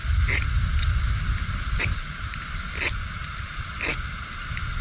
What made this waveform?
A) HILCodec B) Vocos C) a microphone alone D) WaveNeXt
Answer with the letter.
C